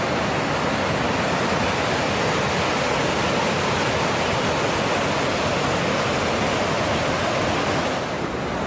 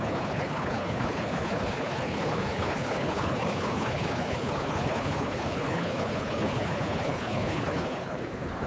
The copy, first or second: second